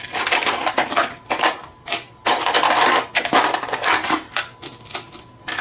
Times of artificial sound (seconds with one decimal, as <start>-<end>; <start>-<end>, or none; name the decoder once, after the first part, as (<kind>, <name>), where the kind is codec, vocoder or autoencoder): none